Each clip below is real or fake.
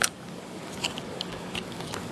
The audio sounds fake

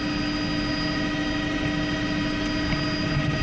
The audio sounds real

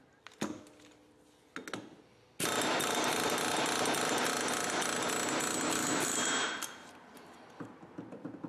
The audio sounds real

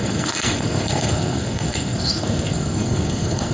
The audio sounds fake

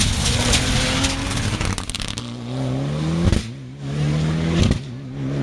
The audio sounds real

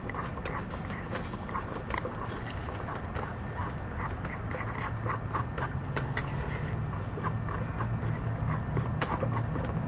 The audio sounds real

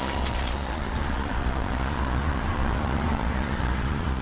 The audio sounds fake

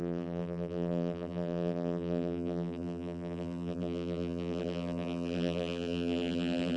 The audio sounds fake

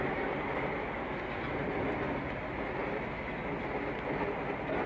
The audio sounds real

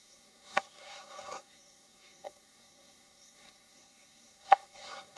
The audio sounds fake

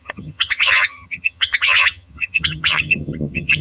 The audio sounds fake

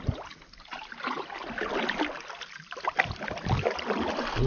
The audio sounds real